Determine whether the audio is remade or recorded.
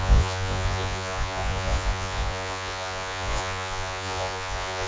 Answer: remade